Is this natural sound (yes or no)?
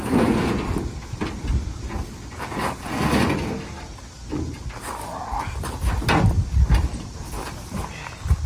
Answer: yes